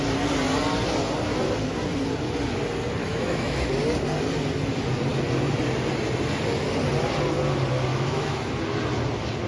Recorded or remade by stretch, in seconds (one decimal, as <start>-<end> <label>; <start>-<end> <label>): 0.0-3.0 recorded; 3.0-3.7 remade; 3.7-7.9 recorded; 7.9-8.5 remade; 8.5-9.5 recorded